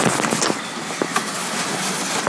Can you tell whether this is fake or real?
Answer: real